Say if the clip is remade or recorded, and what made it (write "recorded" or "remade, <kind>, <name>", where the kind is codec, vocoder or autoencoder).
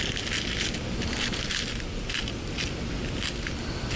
recorded